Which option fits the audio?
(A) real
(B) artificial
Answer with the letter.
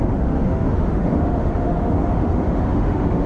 B